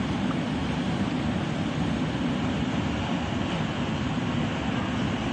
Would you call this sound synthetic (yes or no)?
no